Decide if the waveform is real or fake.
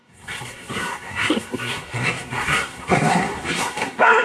fake